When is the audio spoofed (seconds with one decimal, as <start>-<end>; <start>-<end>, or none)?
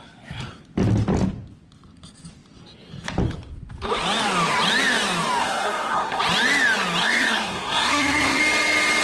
5.4-6.2; 7.0-8.4